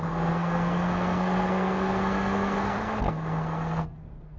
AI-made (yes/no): yes